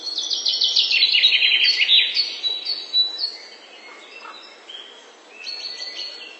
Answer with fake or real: real